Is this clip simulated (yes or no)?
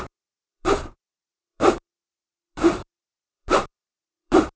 yes